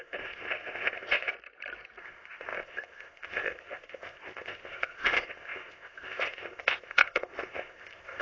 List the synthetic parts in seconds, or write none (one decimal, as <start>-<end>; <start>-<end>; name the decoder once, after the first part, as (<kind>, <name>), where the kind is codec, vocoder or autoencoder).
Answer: 0.0-1.3 (codec, ZipCodec); 2.0-8.2

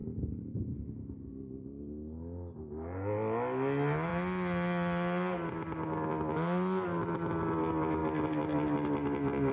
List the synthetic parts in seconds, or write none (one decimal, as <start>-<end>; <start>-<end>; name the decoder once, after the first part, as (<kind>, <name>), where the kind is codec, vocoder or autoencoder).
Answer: 0.0-1.3 (vocoder, BigVGAN v2)